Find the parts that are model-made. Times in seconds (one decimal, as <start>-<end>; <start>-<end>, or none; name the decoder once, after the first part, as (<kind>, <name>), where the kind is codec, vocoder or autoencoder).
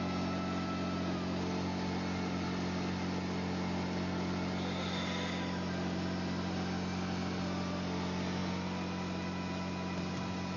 none